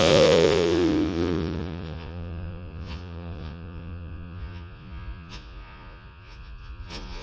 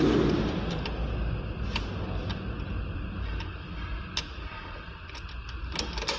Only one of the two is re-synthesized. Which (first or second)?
first